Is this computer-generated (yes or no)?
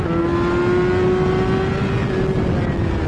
no